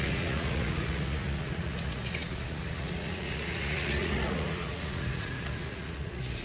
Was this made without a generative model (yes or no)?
no